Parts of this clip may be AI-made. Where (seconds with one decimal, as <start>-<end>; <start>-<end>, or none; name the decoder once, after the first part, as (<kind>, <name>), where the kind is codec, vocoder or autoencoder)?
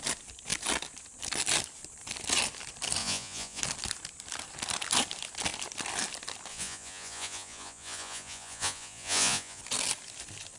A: 3.0-3.6 (vocoder, Vocos); 6.5-9.6